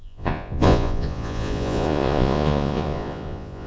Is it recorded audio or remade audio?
remade